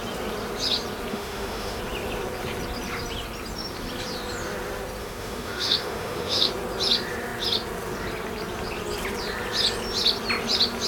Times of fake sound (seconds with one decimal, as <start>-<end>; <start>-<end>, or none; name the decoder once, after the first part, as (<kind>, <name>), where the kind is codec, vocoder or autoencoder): 1.1-1.8 (autoencoder, DAC-VAE); 5.0-6.5